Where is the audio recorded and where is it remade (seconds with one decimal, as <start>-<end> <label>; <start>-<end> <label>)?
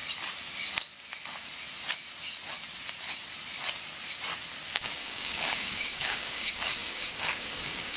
0.0-4.7 recorded; 4.7-8.0 remade